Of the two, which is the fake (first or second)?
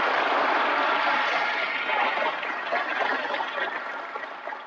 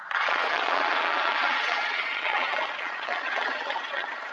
second